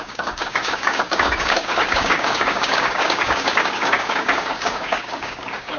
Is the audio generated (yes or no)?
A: yes